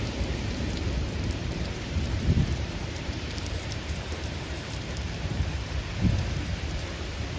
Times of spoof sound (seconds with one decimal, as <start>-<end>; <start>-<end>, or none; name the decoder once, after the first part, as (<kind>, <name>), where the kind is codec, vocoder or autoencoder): 1.4-5.8 (vocoder, BigVGAN v2)